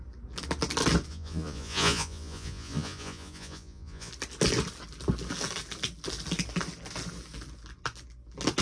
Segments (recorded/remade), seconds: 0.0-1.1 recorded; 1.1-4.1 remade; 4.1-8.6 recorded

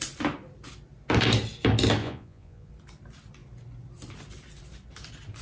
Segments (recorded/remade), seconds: 0.0-2.0 recorded; 2.0-2.7 remade; 2.7-5.4 recorded

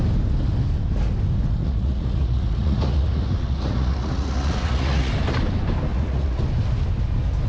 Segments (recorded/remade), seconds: 0.0-1.6 recorded; 1.6-5.1 remade; 5.1-5.9 recorded; 5.9-6.4 remade; 6.4-7.5 recorded

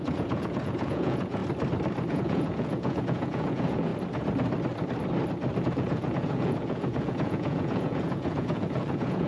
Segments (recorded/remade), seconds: 0.0-1.4 remade; 1.4-2.1 recorded; 2.1-3.9 remade; 3.9-5.6 recorded; 5.6-9.3 remade

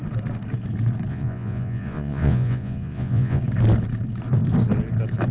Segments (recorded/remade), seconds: 0.0-1.1 recorded; 1.1-3.4 remade; 3.4-5.3 recorded

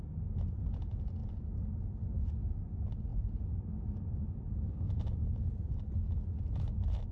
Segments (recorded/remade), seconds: 0.0-7.1 recorded